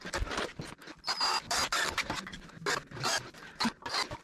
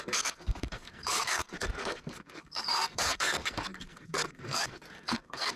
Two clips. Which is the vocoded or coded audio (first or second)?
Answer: second